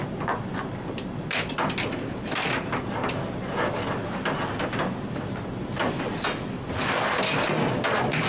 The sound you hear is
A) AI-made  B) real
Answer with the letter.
B